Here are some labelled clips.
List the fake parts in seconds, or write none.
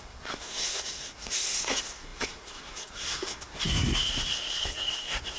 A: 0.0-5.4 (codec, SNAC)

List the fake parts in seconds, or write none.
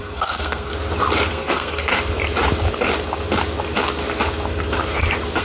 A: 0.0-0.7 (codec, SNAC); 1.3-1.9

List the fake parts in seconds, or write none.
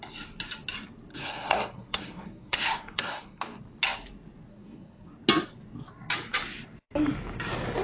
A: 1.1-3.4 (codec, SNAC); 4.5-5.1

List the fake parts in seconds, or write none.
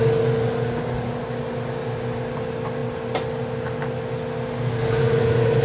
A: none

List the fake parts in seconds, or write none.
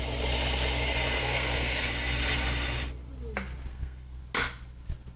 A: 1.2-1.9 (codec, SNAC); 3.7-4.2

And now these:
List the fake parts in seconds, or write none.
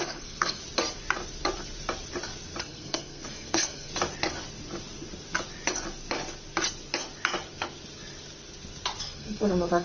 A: 0.0-0.6 (codec, SNAC); 2.6-3.9; 9.0-9.8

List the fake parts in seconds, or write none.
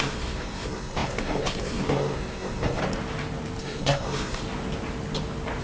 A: 0.0-2.8 (codec, SNAC); 3.6-4.4